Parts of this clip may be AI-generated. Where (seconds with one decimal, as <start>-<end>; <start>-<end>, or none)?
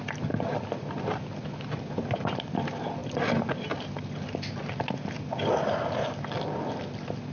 none